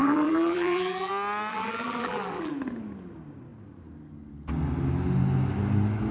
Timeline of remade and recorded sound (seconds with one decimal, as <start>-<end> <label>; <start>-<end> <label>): 0.0-1.1 remade; 1.1-1.5 recorded; 1.5-2.5 remade; 2.5-6.1 recorded